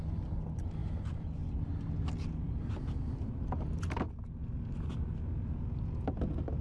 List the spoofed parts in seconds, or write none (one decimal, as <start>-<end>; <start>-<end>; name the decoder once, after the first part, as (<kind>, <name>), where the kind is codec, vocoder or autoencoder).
none